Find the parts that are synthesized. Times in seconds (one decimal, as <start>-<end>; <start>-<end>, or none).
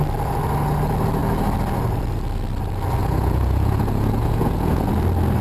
3.0-4.9